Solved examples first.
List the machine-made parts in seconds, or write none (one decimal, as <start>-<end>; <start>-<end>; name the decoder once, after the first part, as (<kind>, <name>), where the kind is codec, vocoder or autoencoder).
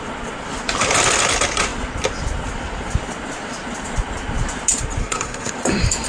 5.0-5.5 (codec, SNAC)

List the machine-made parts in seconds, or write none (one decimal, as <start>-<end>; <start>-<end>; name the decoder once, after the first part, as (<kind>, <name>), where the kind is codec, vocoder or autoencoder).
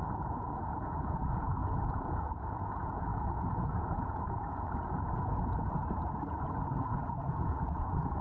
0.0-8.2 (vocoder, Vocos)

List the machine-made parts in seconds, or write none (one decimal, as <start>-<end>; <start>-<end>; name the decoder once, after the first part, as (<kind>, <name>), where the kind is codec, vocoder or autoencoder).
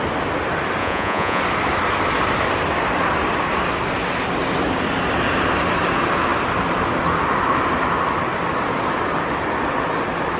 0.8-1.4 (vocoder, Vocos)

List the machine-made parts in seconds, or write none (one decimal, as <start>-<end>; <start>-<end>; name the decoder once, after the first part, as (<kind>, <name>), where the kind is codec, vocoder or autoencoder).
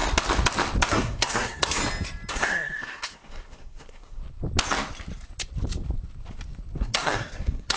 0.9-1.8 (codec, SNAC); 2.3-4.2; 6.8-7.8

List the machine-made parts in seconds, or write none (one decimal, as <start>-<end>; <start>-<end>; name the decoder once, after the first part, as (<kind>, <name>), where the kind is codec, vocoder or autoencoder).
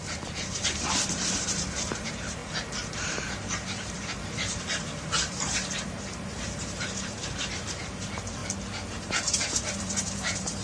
0.0-8.4 (vocoder, BigVGAN v2); 8.9-10.6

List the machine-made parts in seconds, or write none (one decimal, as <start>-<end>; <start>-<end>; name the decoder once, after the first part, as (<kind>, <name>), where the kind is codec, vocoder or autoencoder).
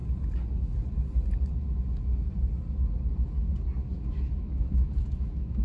3.8-5.6 (autoencoder, DAC-VAE)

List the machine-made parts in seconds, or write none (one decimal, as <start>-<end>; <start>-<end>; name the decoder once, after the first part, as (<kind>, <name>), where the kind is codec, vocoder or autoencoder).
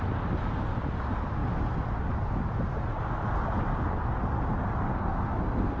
4.9-5.8 (codec, SNAC)